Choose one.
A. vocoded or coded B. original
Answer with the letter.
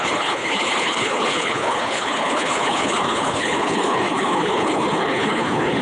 A